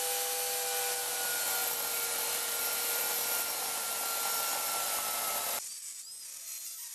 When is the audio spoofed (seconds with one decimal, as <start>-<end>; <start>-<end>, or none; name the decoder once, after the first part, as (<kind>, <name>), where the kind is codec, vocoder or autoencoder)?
none